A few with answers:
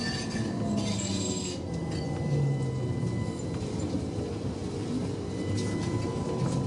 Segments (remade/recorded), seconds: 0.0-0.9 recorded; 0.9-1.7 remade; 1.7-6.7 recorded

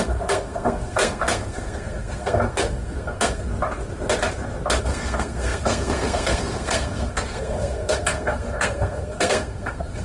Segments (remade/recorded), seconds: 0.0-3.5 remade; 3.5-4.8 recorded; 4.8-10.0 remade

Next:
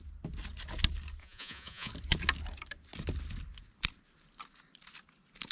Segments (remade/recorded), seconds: 0.0-1.2 recorded; 1.2-1.9 remade; 1.9-5.5 recorded